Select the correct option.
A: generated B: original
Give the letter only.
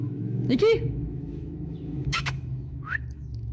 A